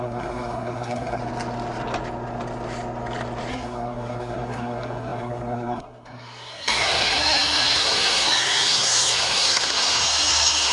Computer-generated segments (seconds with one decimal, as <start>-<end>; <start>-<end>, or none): 0.0-1.2; 3.5-10.7